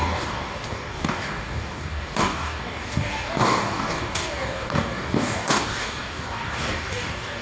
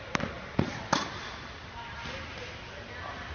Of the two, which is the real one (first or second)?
second